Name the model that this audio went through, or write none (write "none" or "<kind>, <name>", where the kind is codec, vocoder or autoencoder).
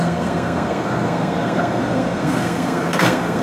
codec, SNAC